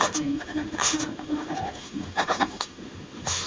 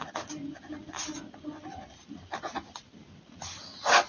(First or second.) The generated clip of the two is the first